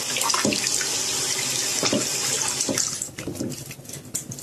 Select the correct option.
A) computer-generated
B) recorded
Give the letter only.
B